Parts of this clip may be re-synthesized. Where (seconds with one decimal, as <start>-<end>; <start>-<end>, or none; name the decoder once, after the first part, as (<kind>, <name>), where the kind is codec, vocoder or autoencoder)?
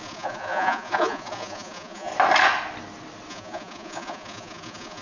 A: 0.0-2.1 (vocoder, Vocos); 3.3-5.0